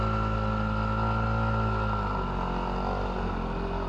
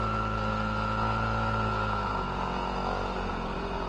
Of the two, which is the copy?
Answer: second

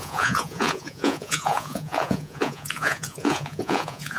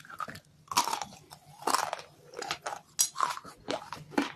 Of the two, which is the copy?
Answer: first